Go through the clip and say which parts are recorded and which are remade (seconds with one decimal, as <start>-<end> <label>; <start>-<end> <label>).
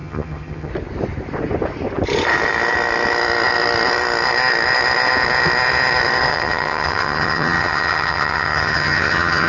0.0-0.7 remade; 0.7-6.3 recorded; 6.3-9.5 remade